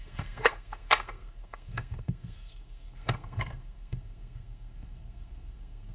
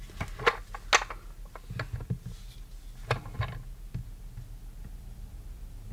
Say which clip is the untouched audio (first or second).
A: second